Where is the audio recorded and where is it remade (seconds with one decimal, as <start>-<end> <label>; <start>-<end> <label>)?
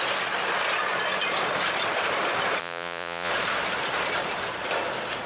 0.0-2.6 recorded; 2.6-3.3 remade; 3.3-5.3 recorded